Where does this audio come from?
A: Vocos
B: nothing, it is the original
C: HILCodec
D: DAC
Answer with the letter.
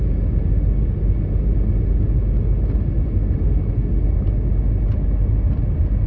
B